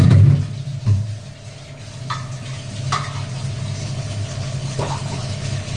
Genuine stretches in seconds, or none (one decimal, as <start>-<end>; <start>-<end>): 0.0-3.8